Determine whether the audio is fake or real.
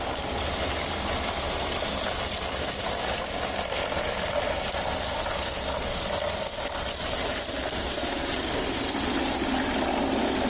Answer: real